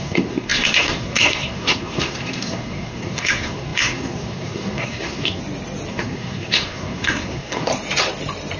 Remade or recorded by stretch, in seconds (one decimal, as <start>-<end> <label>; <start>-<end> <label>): 0.0-5.4 remade; 5.4-5.9 recorded; 5.9-7.7 remade; 7.7-8.6 recorded